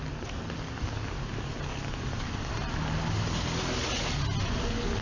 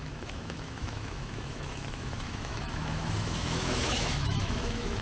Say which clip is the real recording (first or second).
first